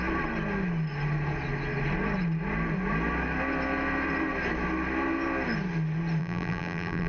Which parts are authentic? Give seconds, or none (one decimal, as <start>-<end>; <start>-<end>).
0.0-6.2